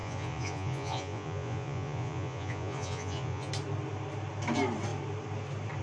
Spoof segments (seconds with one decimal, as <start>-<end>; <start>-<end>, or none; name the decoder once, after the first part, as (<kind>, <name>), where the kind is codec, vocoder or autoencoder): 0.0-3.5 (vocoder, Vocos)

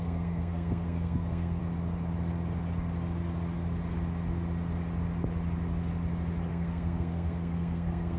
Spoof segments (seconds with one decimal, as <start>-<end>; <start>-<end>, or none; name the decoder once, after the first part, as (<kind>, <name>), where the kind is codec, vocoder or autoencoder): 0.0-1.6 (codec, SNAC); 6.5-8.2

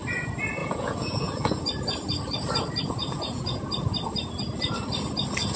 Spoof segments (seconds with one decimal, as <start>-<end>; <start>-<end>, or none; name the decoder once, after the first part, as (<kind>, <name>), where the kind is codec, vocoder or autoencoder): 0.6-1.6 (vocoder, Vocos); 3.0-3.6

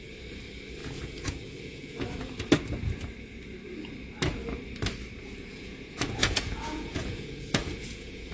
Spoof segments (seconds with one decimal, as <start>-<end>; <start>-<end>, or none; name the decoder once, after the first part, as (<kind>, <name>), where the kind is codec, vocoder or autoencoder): 0.8-2.3 (vocoder, Vocos); 5.5-8.3

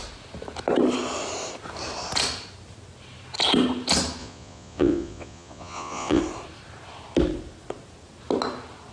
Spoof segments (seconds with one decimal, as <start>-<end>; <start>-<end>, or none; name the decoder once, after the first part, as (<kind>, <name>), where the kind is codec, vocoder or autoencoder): 4.2-6.2 (vocoder, Vocos)

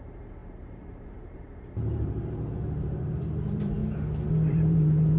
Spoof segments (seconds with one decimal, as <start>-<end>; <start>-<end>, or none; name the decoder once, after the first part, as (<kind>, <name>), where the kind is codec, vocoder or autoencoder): 0.0-3.8 (vocoder, BigVGAN v2); 4.5-5.2

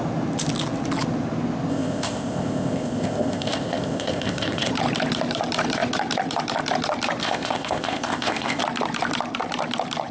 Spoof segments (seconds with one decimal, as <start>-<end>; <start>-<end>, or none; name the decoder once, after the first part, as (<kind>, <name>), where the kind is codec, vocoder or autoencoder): 1.7-4.7 (codec, ZipCodec); 7.2-8.6

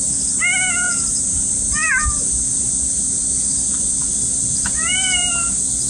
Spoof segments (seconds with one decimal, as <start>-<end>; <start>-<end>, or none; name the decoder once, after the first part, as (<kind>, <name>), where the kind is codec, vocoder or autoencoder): none